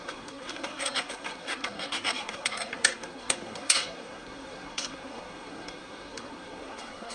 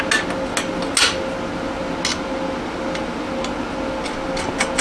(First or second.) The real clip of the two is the second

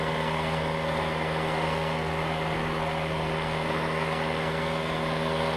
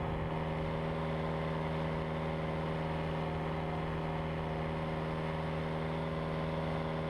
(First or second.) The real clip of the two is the second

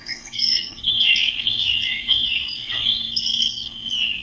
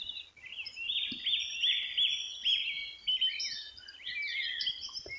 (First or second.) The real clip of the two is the second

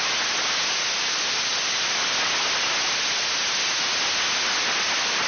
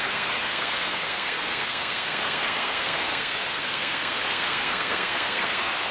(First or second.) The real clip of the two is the first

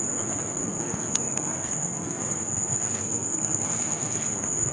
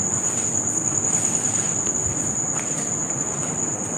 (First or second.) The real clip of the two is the second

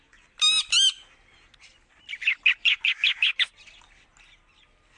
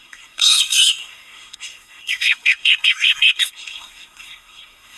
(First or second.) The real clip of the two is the first